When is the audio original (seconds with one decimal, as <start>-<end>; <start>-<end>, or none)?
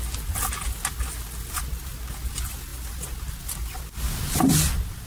0.0-5.1